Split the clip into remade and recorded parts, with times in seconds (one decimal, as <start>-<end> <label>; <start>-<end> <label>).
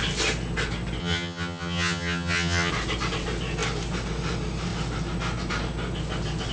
0.0-1.0 recorded; 1.0-2.7 remade; 2.7-6.5 recorded